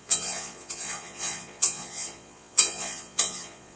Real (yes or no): no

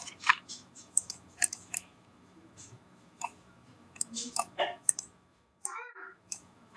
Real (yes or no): no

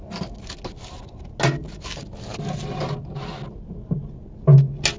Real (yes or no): yes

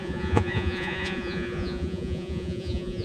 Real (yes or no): no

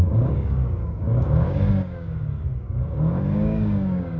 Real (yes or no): no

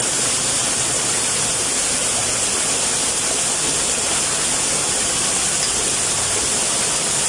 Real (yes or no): yes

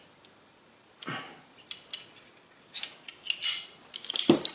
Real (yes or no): yes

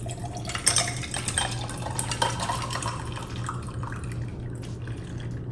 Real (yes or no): yes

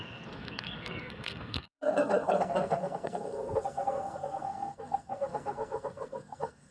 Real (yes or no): no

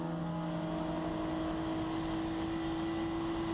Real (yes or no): yes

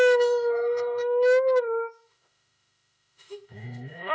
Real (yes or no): no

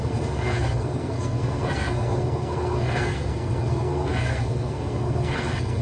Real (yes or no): no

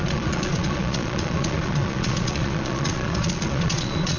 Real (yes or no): no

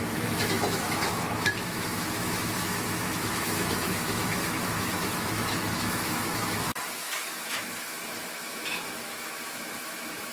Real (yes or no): no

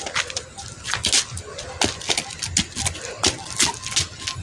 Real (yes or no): yes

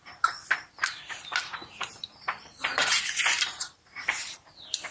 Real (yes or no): no